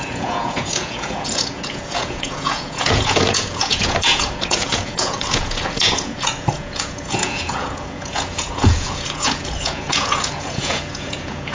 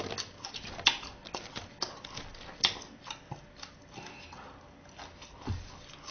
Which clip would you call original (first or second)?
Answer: second